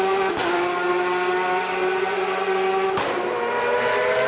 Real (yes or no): yes